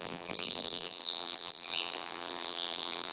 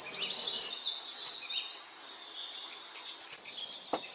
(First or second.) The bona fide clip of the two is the second